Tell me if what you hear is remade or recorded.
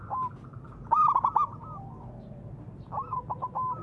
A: recorded